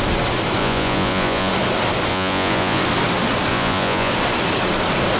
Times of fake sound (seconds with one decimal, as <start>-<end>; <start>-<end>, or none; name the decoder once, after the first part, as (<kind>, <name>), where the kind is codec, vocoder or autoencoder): 0.6-1.5 (vocoder, Vocos); 2.1-2.8; 3.5-4.1